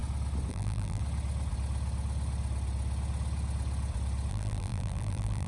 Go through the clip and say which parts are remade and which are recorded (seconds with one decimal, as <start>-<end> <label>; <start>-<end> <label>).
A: 0.0-0.5 recorded; 0.5-1.0 remade; 1.0-4.3 recorded; 4.3-5.5 remade